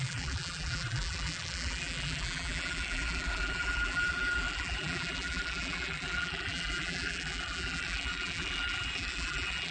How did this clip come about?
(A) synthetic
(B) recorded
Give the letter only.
A